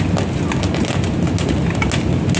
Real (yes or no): yes